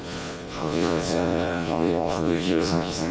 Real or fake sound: fake